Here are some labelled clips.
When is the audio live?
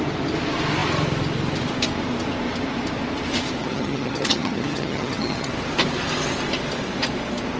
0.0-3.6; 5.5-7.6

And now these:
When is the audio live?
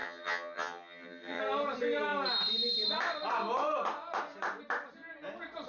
1.4-5.7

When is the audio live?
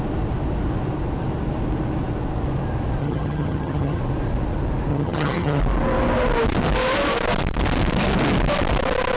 0.0-3.0; 4.0-4.9; 5.6-9.2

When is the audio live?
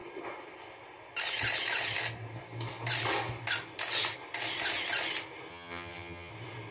0.0-5.5; 6.3-6.7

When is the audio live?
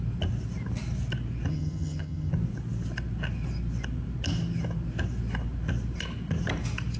0.0-1.5; 2.3-7.0